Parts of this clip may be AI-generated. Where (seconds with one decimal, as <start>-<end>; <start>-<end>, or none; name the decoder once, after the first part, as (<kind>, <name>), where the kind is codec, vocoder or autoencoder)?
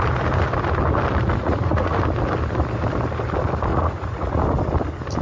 1.4-2.0 (vocoder, Vocos); 3.7-4.4